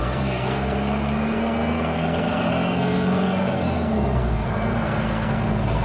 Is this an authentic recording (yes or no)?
no